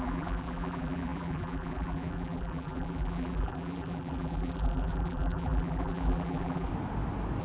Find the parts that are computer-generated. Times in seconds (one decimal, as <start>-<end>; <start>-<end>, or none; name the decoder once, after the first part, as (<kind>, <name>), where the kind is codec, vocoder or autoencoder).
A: 0.0-6.7 (vocoder, BigVGAN v2)

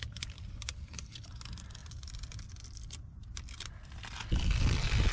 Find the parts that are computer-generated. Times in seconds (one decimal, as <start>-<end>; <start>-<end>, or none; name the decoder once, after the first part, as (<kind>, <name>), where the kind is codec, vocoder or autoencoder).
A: 0.0-5.1 (vocoder, BigVGAN v2)

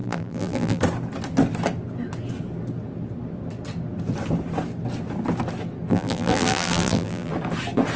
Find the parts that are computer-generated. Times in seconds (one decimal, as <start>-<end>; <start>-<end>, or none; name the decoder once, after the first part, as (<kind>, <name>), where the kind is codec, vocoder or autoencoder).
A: 0.0-0.8 (vocoder, BigVGAN v2); 5.9-7.3

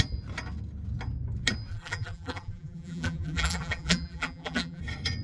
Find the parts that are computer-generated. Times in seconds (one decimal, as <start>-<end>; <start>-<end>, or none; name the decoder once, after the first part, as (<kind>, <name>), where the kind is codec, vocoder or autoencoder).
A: 1.7-4.8 (vocoder, BigVGAN v2)

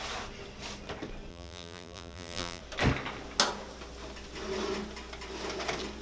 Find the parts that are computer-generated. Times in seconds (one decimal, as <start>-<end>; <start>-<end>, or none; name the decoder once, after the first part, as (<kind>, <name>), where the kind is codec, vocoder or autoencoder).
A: 1.3-2.6 (vocoder, BigVGAN v2)